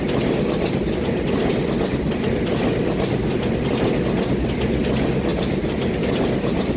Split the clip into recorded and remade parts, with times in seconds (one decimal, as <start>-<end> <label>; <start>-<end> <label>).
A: 0.0-6.8 recorded